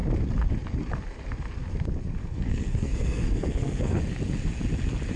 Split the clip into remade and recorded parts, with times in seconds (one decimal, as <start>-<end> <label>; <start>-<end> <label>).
0.0-2.2 recorded; 2.2-4.0 remade; 4.0-5.2 recorded